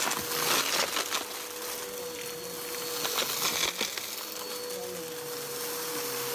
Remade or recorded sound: recorded